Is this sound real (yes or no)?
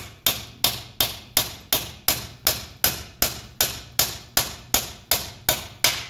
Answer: yes